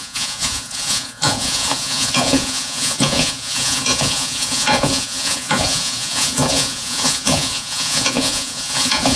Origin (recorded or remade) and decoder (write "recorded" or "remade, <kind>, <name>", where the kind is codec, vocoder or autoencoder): remade, vocoder, Vocos